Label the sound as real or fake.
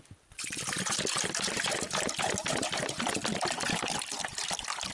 real